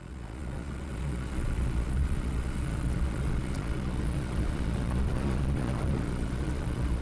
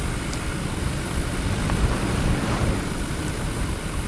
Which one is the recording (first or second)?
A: second